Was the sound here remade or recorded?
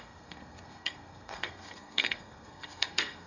remade